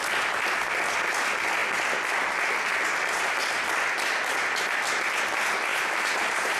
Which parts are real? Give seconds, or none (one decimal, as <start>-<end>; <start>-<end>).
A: 0.0-5.7